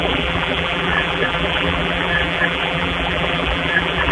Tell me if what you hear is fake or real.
fake